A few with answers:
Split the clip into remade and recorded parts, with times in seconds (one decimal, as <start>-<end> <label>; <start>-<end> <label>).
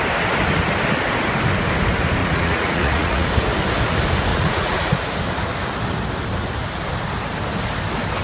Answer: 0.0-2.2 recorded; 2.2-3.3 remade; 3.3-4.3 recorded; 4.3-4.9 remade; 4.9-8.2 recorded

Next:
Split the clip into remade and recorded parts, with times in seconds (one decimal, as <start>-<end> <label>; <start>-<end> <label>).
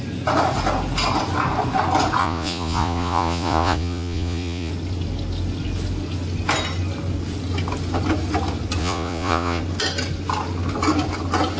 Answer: 0.0-2.2 recorded; 2.2-4.7 remade; 4.7-8.8 recorded; 8.8-9.6 remade; 9.6-11.6 recorded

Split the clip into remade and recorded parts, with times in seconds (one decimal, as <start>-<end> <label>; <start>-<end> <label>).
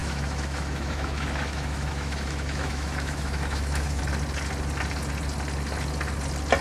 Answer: 0.0-4.0 remade; 4.0-6.6 recorded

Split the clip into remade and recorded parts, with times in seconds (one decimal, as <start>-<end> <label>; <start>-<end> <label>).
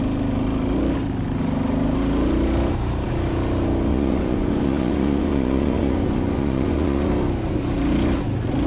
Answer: 0.0-3.9 recorded; 3.9-7.1 remade; 7.1-8.7 recorded